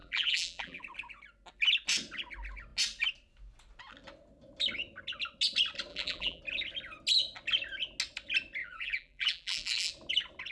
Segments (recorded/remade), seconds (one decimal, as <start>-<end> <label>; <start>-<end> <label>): 0.0-0.8 remade; 0.8-5.9 recorded; 5.9-6.4 remade; 6.4-8.6 recorded; 8.6-9.9 remade; 9.9-10.5 recorded